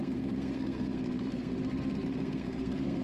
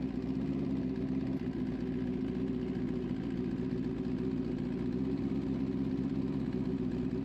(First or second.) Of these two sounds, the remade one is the first